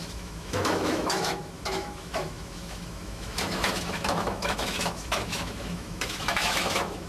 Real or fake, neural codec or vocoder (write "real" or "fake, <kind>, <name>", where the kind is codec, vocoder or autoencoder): fake, autoencoder, DAC-VAE